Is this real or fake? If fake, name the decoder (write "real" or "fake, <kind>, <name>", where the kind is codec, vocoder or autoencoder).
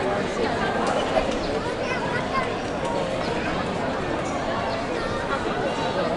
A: real